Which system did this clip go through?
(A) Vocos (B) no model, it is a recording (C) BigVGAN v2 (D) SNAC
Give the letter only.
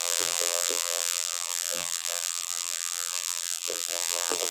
C